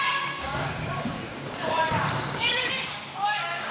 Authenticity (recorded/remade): remade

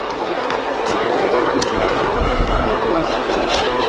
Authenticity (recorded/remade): remade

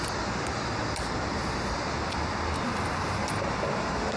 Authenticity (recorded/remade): recorded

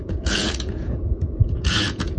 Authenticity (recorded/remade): remade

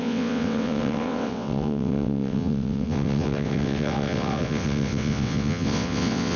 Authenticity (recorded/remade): remade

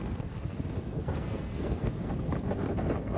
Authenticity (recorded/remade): remade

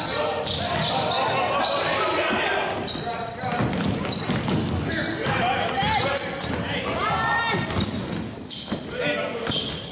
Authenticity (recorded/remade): recorded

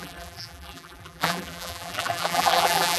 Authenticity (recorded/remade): remade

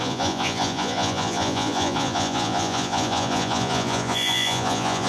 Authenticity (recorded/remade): remade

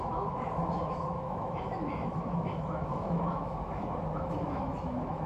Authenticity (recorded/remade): remade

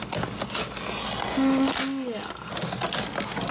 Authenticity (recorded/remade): recorded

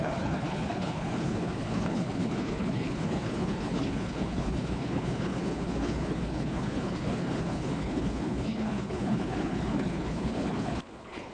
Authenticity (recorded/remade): remade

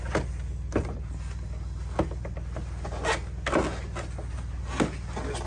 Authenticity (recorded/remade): recorded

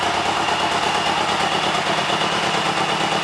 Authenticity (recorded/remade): recorded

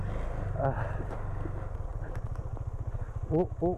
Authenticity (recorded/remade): recorded